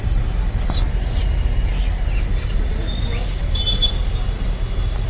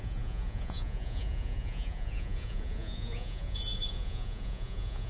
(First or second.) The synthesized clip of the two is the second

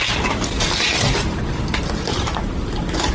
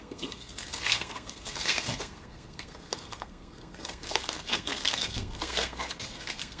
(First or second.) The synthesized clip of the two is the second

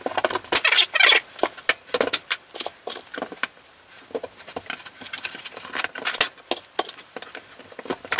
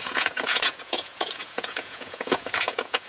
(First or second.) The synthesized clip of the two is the second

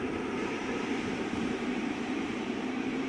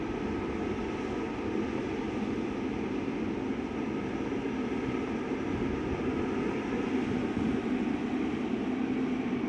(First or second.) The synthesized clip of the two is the first